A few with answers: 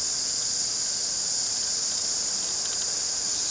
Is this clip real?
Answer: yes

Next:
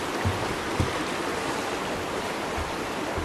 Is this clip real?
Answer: yes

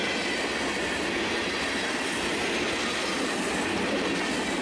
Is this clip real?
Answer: yes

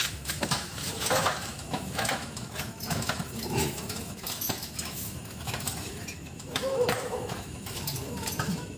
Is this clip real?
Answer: no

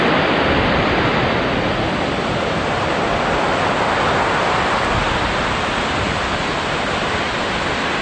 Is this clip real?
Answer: yes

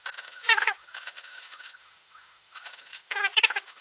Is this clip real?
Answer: no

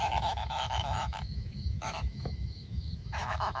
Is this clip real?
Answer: no